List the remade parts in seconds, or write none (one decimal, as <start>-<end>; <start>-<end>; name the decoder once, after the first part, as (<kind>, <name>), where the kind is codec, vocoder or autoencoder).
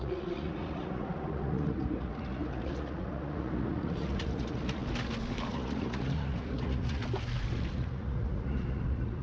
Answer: 0.0-4.8 (vocoder, Vocos); 5.5-7.0; 7.7-9.2